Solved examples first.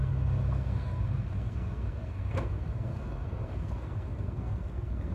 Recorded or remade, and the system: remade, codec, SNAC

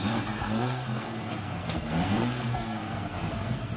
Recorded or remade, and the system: remade, codec, SNAC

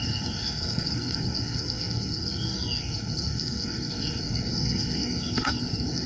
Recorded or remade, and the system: remade, codec, SNAC